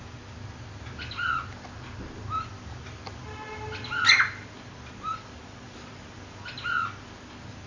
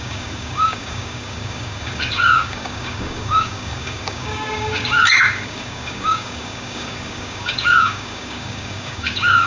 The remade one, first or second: second